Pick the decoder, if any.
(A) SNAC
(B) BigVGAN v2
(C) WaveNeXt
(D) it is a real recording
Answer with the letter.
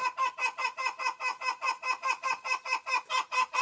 D